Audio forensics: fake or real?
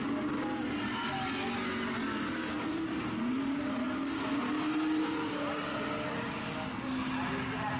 real